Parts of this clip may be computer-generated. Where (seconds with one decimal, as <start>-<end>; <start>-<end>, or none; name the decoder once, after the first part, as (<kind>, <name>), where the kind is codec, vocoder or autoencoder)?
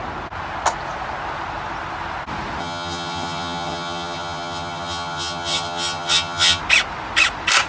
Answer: 2.6-6.6 (vocoder, HiFi-GAN)